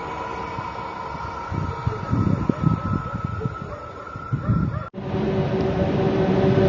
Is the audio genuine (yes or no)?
yes